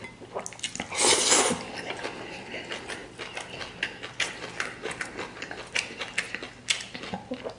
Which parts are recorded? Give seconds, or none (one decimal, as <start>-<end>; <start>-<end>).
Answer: 0.0-7.6